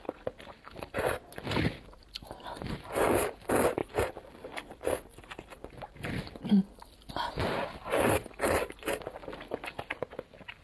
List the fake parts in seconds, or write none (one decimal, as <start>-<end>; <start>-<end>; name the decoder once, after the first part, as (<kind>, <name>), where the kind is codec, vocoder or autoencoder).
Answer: 3.8-6.2 (vocoder, BigVGAN v2)